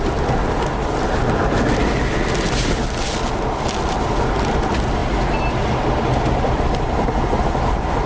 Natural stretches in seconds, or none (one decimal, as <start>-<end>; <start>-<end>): 0.0-8.1